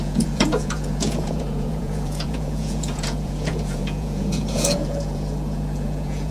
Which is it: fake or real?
fake